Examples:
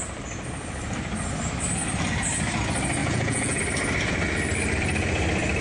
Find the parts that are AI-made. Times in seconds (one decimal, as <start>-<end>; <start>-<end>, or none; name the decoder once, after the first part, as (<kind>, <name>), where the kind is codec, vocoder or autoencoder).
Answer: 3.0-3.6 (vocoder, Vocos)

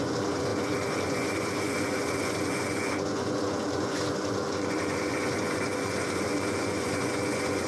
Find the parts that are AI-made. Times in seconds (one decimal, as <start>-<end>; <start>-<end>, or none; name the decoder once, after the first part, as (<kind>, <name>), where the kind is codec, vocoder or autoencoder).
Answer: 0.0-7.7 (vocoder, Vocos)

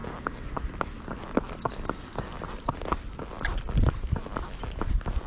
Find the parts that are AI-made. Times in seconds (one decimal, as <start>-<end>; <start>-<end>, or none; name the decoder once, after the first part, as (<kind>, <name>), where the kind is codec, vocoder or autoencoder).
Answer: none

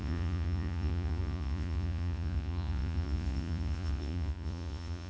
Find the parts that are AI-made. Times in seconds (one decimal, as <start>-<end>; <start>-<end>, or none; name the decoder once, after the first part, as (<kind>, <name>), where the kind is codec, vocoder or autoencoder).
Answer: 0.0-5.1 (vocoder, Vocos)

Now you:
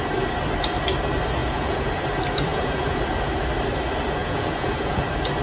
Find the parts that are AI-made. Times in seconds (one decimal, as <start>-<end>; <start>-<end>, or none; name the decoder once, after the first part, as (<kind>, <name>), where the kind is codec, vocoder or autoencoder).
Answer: 1.4-1.9 (vocoder, Vocos); 2.5-3.0; 4.2-5.0

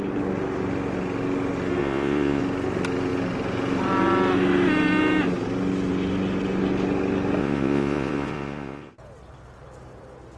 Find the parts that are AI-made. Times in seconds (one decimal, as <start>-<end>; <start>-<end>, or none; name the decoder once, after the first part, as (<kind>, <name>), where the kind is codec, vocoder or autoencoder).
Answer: 1.8-2.4 (vocoder, Vocos); 7.4-8.9

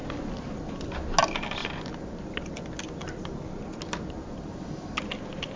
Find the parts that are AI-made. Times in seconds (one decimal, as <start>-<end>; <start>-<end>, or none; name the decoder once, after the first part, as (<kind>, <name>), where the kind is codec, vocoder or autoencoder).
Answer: none